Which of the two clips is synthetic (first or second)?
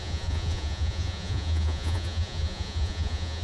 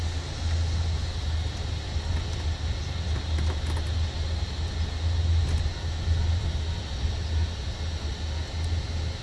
first